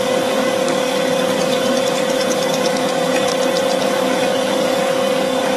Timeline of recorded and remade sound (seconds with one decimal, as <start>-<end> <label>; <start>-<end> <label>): 0.0-3.3 remade; 3.3-3.8 recorded; 3.8-5.6 remade